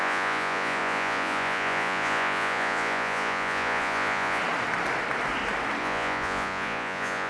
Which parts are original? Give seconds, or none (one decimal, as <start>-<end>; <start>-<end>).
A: 4.4-5.8